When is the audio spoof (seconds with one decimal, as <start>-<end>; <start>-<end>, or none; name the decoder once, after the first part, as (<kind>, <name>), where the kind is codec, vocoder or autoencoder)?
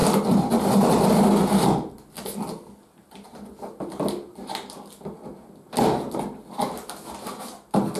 none